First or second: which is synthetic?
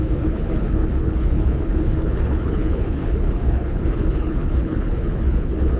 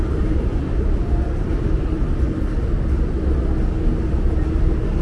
first